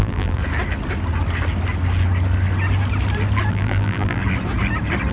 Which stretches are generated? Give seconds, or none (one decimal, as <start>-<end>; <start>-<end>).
0.0-0.4; 3.5-4.2